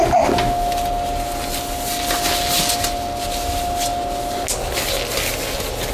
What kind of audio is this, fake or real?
real